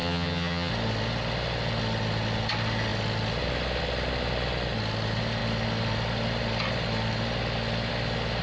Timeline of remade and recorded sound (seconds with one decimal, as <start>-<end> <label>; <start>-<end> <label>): 0.0-0.7 remade; 0.7-8.4 recorded